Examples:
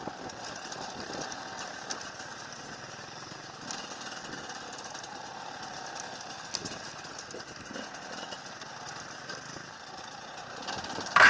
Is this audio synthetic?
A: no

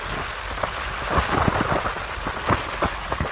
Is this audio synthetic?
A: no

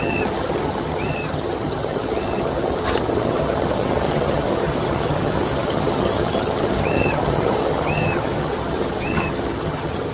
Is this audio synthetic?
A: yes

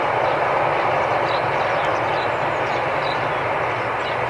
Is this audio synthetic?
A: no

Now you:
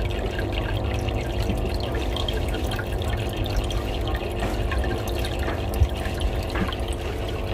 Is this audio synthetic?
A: no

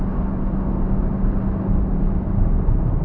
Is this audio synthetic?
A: no